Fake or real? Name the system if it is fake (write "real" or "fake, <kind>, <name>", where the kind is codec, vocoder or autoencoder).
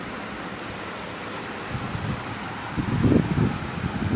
real